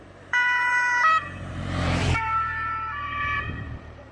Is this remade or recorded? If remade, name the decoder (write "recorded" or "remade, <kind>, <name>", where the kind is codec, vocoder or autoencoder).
remade, vocoder, BigVGAN v2